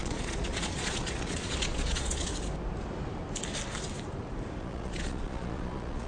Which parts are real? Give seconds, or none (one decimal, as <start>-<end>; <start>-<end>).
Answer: 2.3-4.6